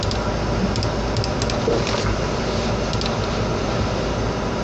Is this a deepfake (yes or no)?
no